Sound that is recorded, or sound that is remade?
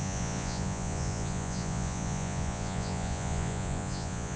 remade